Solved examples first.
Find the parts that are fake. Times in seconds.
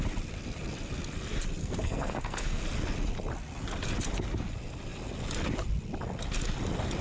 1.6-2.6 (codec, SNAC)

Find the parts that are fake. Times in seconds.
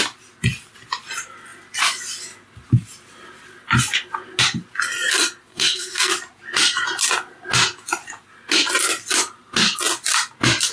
5.5-6.1 (codec, SNAC)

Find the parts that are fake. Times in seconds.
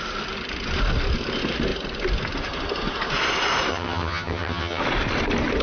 3.7-4.8 (vocoder, HiFi-GAN)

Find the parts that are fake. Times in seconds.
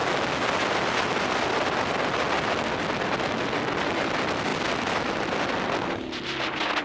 none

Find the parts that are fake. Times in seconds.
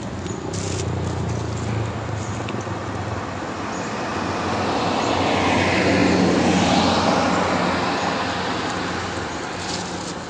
none